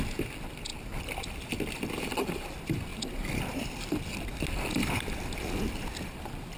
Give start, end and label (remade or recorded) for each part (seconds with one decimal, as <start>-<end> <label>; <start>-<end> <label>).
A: 0.0-6.6 recorded